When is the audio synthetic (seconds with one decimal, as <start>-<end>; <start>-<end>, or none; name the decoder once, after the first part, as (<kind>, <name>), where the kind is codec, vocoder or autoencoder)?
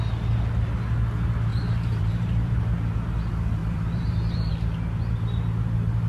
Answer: 1.5-2.6 (vocoder, BigVGAN v2); 3.6-4.5